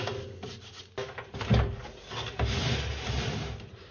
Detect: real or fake real